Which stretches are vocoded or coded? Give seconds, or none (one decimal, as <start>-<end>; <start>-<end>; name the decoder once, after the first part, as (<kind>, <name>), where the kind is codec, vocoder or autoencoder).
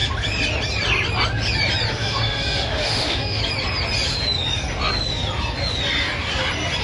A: 1.9-3.4 (autoencoder, DAC-VAE)